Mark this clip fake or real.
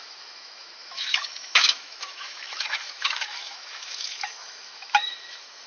fake